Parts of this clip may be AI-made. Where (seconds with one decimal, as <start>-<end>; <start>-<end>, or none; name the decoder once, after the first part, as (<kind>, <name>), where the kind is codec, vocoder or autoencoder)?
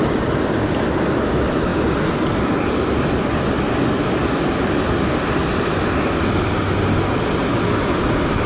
none